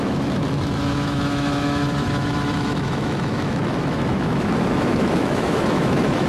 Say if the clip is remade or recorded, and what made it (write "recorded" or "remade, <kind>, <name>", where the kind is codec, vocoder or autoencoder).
remade, autoencoder, DAC-VAE